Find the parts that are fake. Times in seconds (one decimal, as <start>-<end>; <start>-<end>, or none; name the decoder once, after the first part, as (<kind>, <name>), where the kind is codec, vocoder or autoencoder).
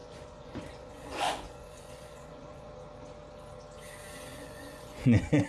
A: 0.0-2.7 (vocoder, Vocos); 4.3-5.5